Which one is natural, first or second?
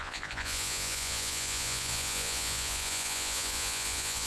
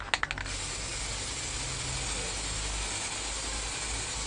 second